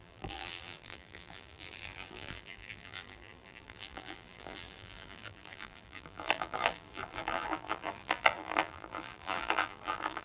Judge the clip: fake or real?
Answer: fake